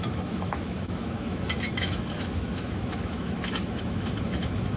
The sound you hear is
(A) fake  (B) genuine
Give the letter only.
A